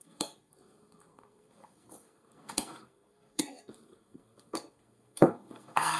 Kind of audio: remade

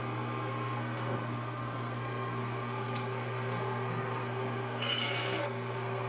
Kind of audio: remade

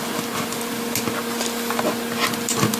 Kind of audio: recorded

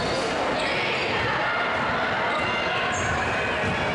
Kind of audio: recorded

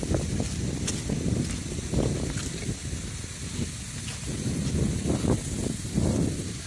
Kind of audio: recorded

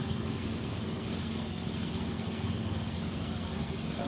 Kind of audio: remade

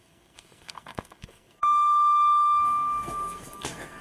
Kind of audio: remade